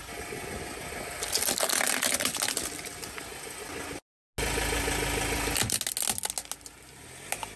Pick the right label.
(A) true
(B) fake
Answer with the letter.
A